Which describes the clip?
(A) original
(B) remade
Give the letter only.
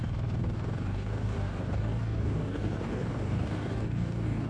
B